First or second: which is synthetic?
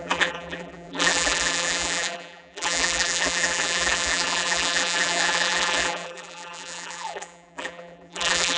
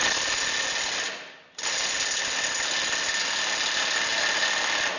first